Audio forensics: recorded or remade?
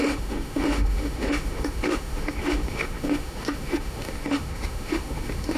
remade